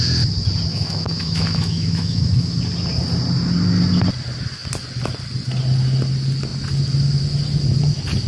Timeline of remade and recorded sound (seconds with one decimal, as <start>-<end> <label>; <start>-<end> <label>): 0.0-0.7 recorded; 0.7-2.6 remade; 2.6-8.3 recorded